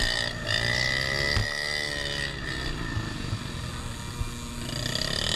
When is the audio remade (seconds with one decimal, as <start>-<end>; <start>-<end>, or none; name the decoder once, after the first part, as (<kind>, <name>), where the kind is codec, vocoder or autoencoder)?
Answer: none

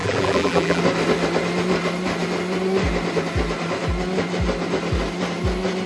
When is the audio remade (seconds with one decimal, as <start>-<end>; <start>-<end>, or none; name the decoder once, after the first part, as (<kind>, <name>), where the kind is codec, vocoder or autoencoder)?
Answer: 0.0-0.8 (vocoder, BigVGAN v2)